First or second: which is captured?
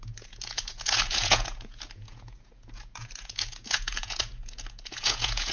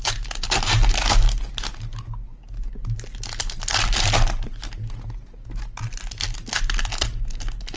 second